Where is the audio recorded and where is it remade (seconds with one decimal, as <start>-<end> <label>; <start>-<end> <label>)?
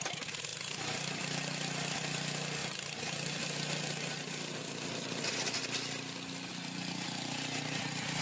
0.0-8.2 recorded